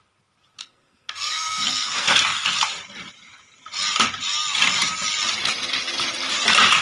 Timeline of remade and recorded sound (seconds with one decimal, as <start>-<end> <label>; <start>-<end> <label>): 0.0-0.6 recorded; 0.6-2.2 remade; 2.2-6.8 recorded

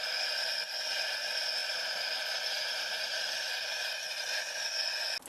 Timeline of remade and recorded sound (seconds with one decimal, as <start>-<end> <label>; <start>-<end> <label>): 0.0-5.3 recorded

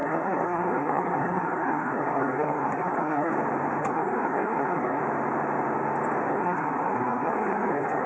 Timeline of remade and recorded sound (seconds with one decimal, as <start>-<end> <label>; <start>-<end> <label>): 0.0-3.3 remade; 3.3-3.8 recorded; 3.8-5.0 remade; 5.0-6.3 recorded; 6.3-8.1 remade

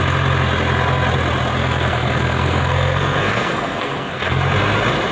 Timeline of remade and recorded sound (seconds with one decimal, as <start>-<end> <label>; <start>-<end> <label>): 0.0-1.6 recorded; 1.6-4.4 remade; 4.4-5.1 recorded